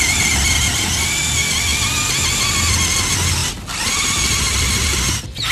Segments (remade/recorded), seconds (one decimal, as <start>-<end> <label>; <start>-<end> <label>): 0.0-3.4 recorded; 3.4-4.1 remade; 4.1-5.5 recorded